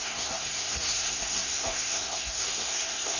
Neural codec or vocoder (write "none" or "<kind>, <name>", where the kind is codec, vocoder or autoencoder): codec, SNAC